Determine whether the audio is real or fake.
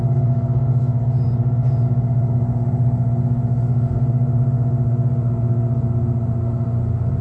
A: real